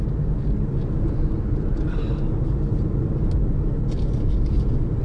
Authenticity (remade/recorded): recorded